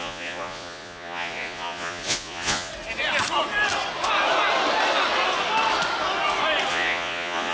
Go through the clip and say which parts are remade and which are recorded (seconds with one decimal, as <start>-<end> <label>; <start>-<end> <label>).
0.0-2.7 remade; 2.7-6.7 recorded; 6.7-7.5 remade